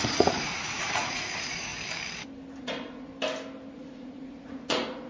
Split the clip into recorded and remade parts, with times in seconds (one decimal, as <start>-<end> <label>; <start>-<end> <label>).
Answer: 0.0-1.7 remade; 1.7-2.6 recorded; 2.6-3.1 remade; 3.1-3.7 recorded; 3.7-5.1 remade